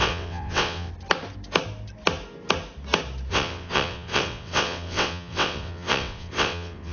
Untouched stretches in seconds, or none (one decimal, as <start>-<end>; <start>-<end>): 0.9-3.3